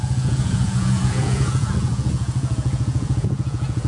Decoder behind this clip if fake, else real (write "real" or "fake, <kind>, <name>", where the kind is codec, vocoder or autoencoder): fake, vocoder, Vocos